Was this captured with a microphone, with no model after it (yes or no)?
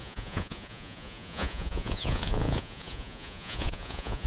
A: no